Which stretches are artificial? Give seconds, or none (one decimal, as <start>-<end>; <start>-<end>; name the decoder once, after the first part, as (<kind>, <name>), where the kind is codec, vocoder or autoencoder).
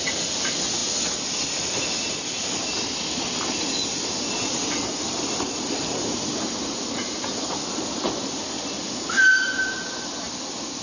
none